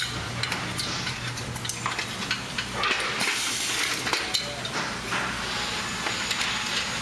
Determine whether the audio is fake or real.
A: real